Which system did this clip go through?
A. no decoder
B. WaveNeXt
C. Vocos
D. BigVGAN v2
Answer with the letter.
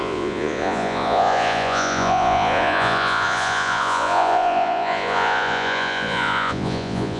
C